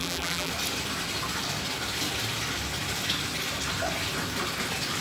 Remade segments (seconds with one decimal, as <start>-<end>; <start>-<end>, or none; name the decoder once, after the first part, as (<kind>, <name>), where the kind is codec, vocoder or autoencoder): 0.0-0.5 (vocoder, BigVGAN v2)